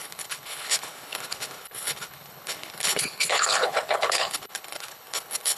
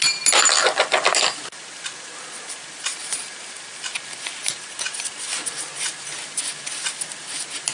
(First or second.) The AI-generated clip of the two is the first